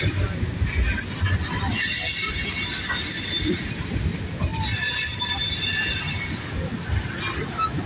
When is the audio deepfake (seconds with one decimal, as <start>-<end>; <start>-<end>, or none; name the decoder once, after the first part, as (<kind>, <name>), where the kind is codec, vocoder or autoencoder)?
none